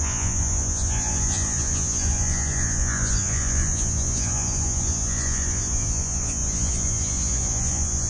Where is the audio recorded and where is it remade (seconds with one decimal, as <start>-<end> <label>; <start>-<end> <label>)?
0.0-8.1 remade